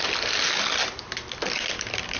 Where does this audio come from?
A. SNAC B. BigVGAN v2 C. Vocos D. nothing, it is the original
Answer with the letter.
D